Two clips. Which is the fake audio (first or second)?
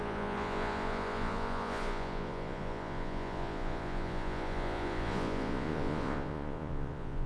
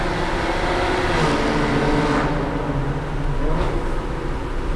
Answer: first